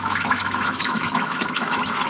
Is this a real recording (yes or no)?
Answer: no